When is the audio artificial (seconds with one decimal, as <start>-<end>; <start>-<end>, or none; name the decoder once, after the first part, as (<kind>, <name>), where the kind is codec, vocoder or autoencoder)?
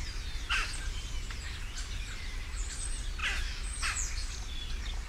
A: none